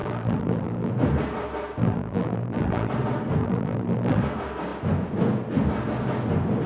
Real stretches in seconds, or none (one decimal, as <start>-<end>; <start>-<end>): 0.9-1.8; 2.9-3.4; 4.2-6.7